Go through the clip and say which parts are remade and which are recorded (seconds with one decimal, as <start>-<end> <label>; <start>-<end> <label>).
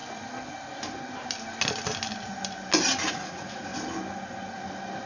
0.0-3.1 recorded; 3.1-3.7 remade; 3.7-5.1 recorded